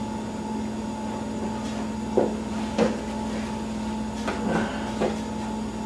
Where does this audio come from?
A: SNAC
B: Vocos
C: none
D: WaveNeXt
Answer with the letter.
C